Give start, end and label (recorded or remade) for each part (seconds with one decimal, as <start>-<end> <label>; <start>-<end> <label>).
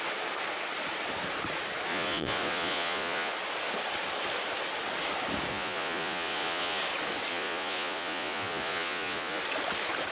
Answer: 0.0-1.9 recorded; 1.9-3.3 remade; 3.3-5.5 recorded; 5.5-6.8 remade; 6.8-7.3 recorded; 7.3-9.4 remade; 9.4-10.1 recorded